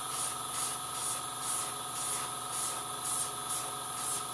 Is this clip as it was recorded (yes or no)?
yes